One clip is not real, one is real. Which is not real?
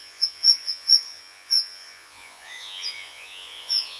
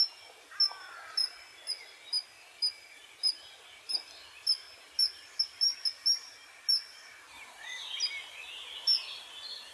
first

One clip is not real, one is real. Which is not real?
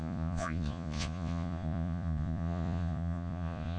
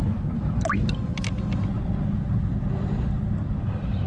first